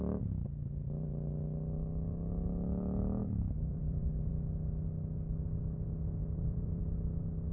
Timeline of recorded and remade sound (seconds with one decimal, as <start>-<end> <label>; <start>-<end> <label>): 0.0-3.2 recorded; 3.2-4.3 remade; 4.3-6.2 recorded; 6.2-6.8 remade; 6.8-7.5 recorded